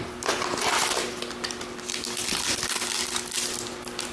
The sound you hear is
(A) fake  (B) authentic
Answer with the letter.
B